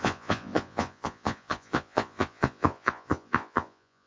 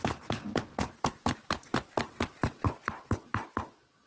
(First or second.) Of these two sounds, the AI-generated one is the first